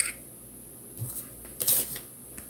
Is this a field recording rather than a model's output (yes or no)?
yes